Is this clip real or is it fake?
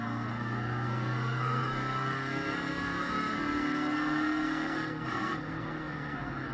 fake